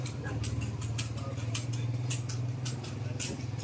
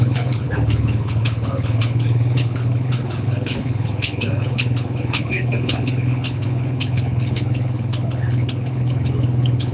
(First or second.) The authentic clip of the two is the first